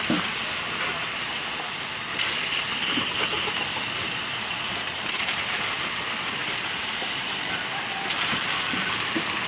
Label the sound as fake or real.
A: fake